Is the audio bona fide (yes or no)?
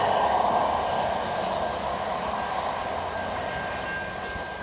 yes